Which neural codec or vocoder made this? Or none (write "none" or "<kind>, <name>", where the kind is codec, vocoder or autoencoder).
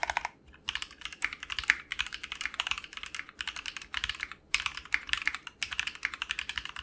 vocoder, BigVGAN v2